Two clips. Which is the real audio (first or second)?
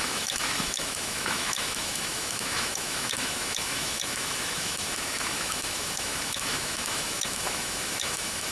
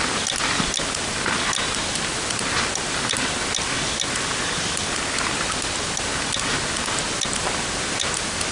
second